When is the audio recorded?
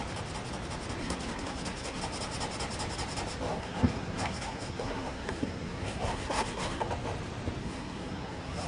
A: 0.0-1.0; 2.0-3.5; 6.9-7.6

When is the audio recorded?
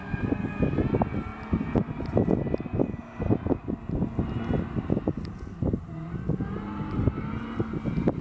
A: 0.0-8.2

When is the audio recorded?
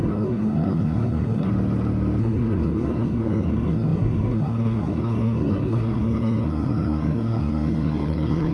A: 1.5-2.2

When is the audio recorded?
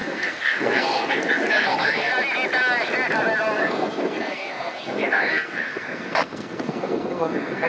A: 2.1-3.6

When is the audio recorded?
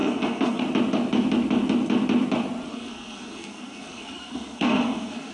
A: 0.6-2.7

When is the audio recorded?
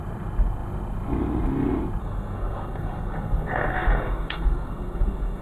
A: 0.0-2.0